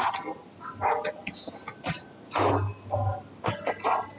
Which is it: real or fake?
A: real